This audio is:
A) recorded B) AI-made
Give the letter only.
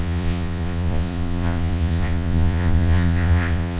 B